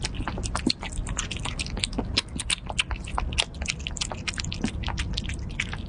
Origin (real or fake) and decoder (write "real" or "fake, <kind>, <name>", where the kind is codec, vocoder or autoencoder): real